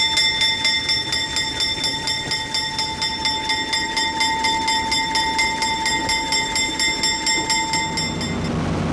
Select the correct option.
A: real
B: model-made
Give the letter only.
A